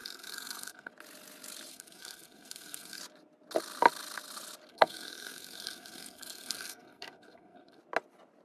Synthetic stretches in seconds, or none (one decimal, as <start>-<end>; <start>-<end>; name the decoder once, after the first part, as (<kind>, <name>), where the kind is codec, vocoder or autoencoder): 0.0-0.9 (codec, SNAC); 1.7-3.0; 4.7-7.8